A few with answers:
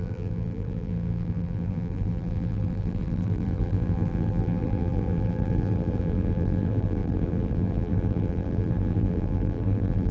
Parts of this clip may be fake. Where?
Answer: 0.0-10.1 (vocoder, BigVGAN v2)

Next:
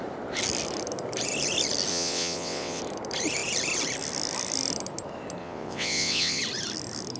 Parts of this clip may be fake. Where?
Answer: 1.9-2.8 (vocoder, WaveNeXt); 5.4-6.4

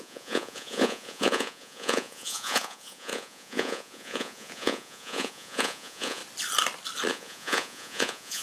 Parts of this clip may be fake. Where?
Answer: 0.0-6.2 (vocoder, Vocos); 7.1-8.4

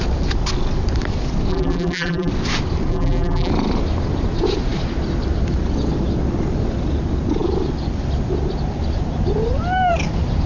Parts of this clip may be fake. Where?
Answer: 1.5-2.3 (vocoder, BigVGAN v2); 2.9-3.5

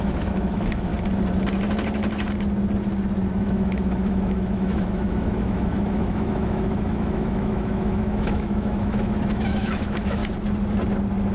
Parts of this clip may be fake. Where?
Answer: 0.0-0.9 (autoencoder, DAC-VAE); 3.3-10.2